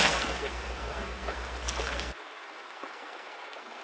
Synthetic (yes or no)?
yes